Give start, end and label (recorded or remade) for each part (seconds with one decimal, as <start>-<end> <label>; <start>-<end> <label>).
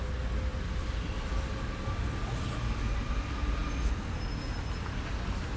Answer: 0.0-5.6 recorded